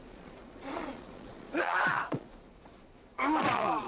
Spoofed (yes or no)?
yes